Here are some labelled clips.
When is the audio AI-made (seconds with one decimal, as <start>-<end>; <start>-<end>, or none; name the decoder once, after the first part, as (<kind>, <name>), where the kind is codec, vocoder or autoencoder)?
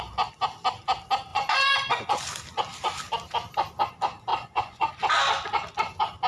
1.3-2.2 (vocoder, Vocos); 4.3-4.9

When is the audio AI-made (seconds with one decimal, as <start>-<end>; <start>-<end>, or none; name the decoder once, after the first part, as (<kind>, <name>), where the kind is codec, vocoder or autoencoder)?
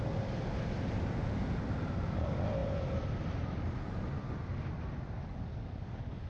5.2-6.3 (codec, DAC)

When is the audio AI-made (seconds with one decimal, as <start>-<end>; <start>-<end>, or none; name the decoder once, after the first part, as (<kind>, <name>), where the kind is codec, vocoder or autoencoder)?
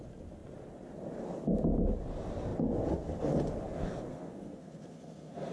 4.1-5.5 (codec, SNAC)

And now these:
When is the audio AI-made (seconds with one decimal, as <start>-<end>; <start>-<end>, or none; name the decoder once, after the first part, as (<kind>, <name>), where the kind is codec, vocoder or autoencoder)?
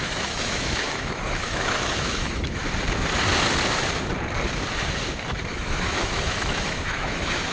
0.0-2.6 (autoencoder, DAC-VAE); 5.5-7.5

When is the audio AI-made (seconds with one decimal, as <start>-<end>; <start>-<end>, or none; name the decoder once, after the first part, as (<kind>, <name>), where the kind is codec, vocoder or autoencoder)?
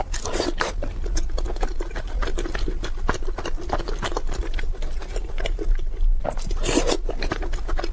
5.1-7.4 (vocoder, BigVGAN v2)